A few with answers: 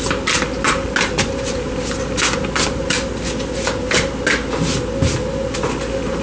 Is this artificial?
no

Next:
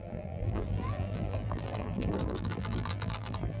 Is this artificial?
yes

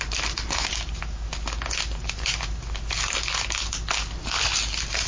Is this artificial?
no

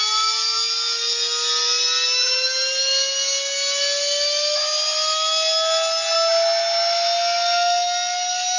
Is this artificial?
no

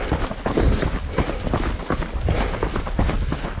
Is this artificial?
no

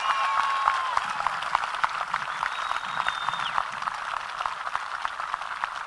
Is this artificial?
no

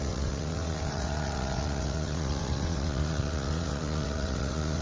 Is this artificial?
yes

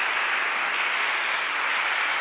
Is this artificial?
no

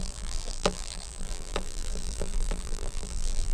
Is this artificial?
yes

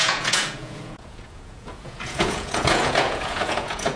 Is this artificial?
yes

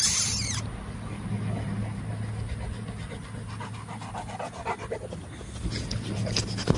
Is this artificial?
no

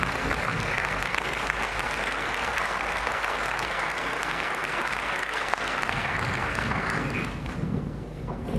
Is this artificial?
yes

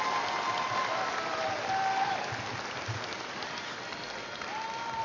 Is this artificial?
no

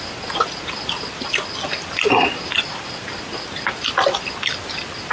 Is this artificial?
no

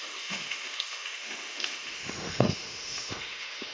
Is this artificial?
yes